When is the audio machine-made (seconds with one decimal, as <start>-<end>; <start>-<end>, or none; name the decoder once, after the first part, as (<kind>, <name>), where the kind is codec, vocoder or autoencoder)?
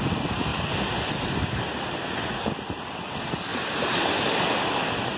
none